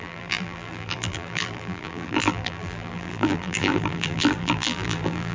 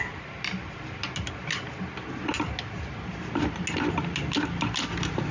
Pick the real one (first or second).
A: second